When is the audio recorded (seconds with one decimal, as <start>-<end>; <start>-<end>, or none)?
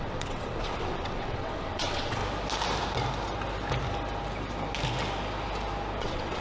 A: 2.2-6.0